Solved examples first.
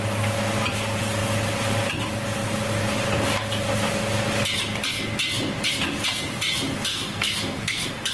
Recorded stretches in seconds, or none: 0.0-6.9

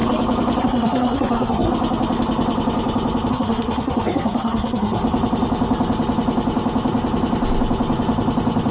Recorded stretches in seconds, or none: 0.0-0.6; 1.7-3.3; 5.0-8.7